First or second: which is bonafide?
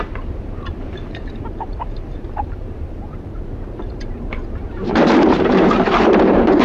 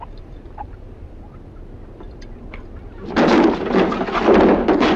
second